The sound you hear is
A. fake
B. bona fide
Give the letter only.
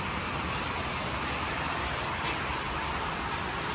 B